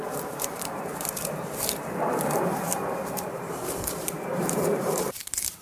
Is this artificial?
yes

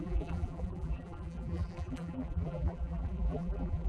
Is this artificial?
yes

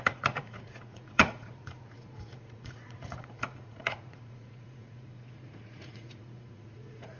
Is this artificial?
yes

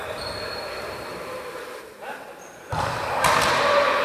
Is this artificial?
yes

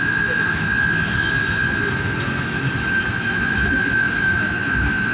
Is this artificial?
yes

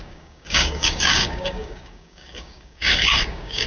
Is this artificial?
yes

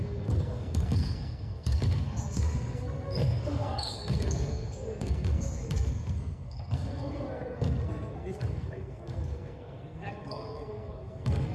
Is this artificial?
yes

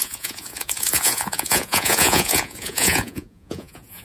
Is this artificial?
yes